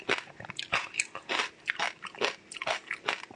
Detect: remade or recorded recorded